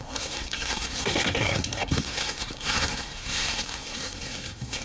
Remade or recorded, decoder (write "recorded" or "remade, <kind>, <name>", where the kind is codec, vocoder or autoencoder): remade, codec, SNAC